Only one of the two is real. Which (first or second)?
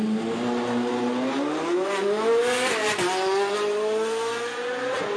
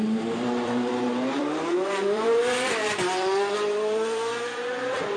first